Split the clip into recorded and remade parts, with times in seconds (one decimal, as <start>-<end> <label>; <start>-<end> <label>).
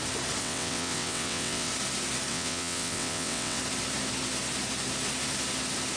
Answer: 0.0-0.4 recorded; 0.4-1.7 remade; 1.7-2.3 recorded; 2.3-3.6 remade; 3.6-6.0 recorded